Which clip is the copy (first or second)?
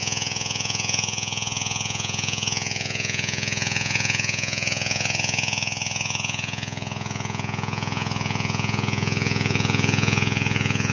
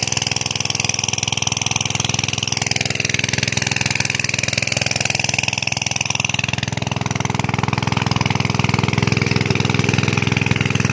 first